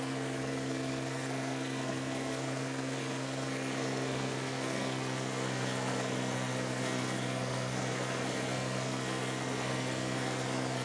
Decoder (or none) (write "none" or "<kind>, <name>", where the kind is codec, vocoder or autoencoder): codec, SNAC